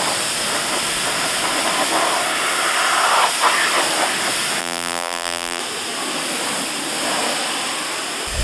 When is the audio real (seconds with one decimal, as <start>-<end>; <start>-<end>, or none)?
0.0-4.6; 5.6-8.4